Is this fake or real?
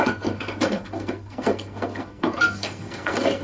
fake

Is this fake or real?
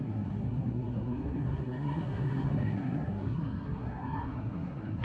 fake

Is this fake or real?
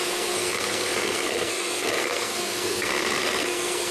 fake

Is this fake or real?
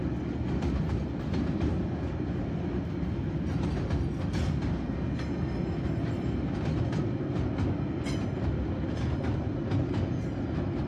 real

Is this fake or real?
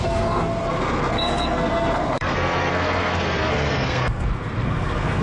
fake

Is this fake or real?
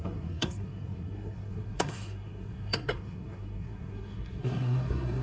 fake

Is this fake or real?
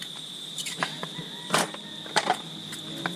real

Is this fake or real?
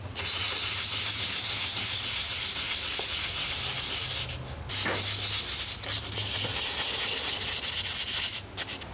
real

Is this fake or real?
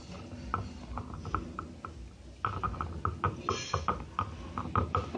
real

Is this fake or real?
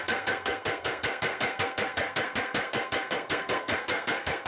fake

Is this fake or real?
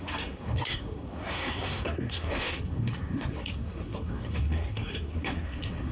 fake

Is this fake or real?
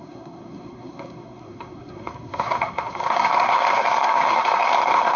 fake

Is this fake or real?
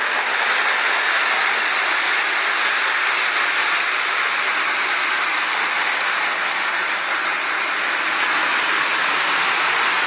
real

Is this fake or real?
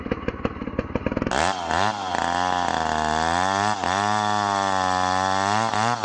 real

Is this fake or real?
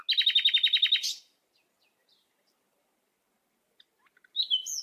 real